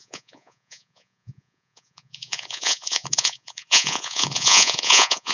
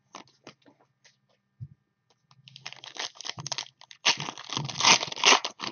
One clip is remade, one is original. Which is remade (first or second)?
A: first